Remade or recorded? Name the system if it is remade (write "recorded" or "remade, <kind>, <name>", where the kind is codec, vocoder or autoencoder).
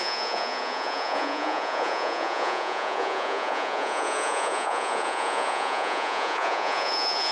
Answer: remade, vocoder, Vocos